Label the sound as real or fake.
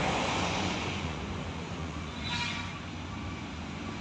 fake